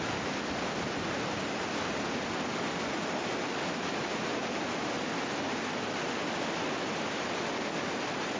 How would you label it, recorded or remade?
recorded